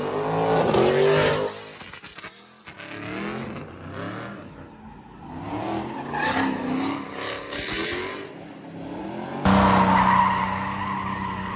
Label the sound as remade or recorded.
recorded